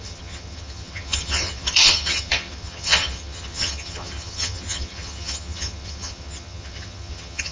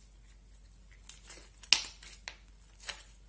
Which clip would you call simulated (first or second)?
first